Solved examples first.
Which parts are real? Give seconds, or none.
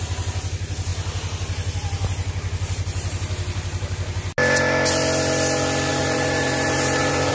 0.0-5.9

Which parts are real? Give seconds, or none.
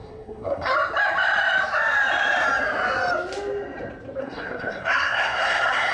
0.7-4.2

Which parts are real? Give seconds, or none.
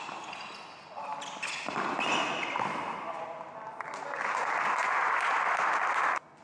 0.0-4.8; 5.3-6.4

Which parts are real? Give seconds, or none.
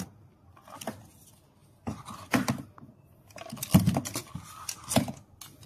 0.0-5.7